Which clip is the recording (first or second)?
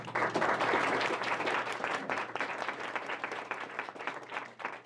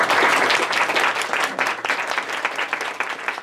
second